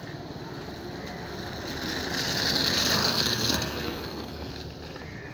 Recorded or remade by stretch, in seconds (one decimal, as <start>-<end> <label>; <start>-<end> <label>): 0.0-3.0 recorded; 3.0-4.5 remade; 4.5-5.3 recorded